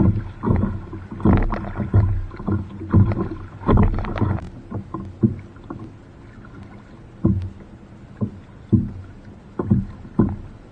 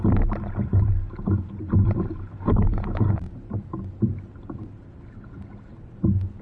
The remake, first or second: second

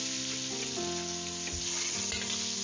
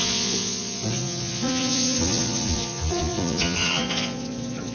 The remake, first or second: second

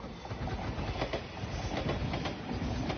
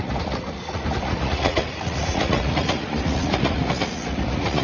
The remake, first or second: second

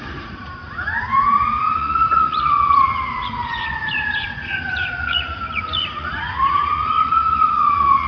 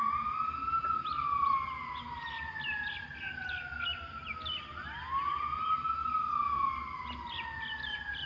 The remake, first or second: first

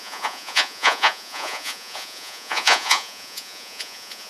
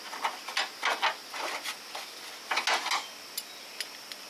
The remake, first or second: first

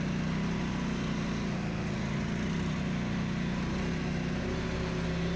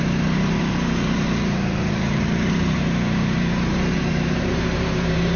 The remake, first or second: second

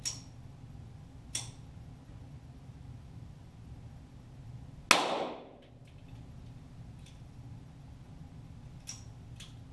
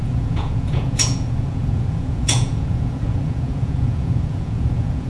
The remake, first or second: second